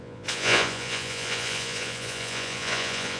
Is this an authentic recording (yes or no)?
no